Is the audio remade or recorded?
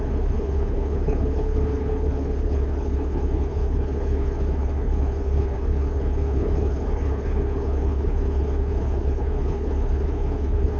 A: remade